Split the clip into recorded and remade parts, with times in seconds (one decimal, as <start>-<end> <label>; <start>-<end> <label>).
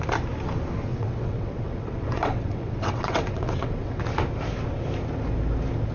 0.0-0.9 recorded; 0.9-4.0 remade; 4.0-5.9 recorded